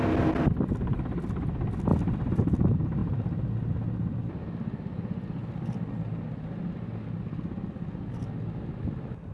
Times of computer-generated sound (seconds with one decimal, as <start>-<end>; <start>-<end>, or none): none